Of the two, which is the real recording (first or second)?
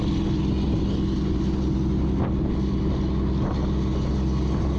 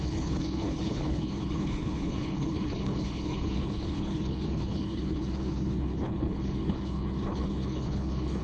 first